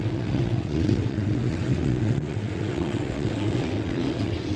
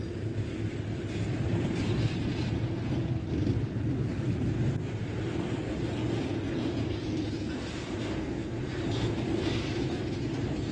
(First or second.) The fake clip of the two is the first